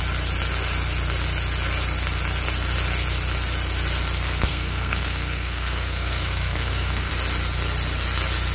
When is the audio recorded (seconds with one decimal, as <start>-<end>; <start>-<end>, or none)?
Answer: 0.0-4.5; 7.1-8.5